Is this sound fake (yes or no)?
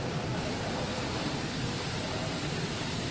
yes